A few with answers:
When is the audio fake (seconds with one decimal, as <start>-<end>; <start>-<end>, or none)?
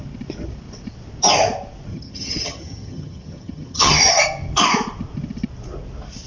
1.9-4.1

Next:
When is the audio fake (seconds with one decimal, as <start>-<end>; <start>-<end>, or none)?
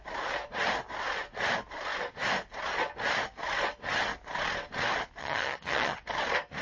5.2-6.0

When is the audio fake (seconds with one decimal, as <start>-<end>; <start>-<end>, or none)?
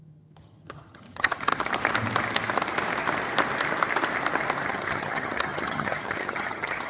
0.0-1.5; 4.7-6.9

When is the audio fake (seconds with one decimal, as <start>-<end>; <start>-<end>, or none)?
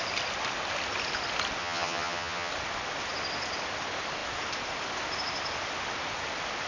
1.6-2.5